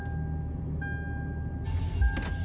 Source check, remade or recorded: recorded